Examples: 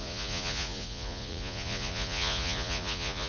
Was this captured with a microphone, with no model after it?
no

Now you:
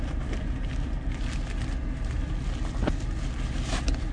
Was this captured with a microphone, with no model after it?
yes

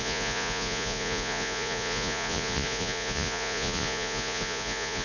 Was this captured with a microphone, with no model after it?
no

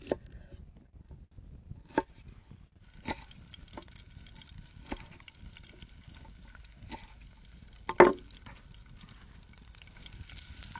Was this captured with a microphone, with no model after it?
yes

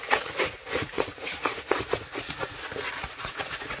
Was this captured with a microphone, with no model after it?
no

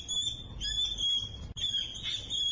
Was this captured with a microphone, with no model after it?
yes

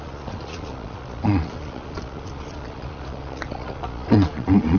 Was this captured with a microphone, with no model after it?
no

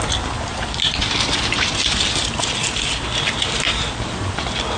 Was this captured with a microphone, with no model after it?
yes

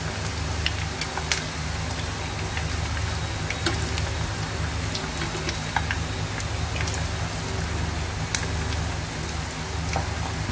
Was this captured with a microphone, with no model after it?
yes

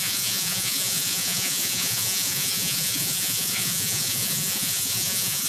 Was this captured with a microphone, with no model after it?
no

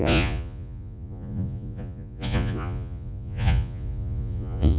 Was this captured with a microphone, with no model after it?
no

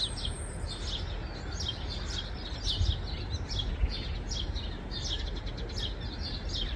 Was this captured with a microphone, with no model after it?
yes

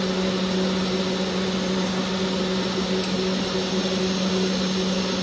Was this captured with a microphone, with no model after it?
yes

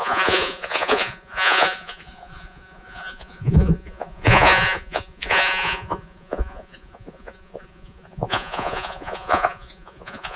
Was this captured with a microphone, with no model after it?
no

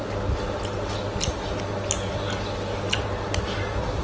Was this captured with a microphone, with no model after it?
yes